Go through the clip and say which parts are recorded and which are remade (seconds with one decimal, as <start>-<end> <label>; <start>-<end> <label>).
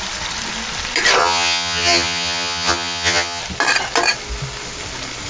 0.0-1.2 recorded; 1.2-3.4 remade; 3.4-5.3 recorded